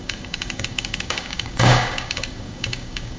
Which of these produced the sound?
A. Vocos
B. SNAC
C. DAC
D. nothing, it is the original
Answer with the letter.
C